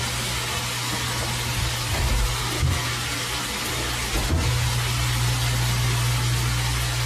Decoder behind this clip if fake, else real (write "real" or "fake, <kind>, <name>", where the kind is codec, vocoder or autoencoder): real